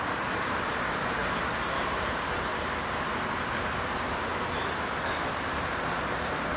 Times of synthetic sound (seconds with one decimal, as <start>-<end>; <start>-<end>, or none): 0.0-1.2; 1.8-2.5; 5.4-6.6